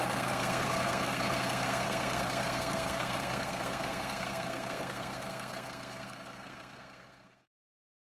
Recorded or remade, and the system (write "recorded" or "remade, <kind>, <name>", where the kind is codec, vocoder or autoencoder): remade, codec, SNAC